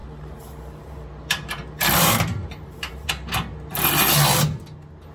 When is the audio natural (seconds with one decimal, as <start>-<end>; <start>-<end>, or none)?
3.1-5.1